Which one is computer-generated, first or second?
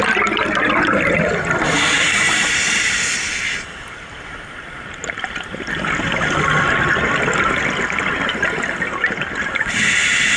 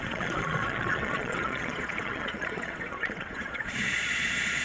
second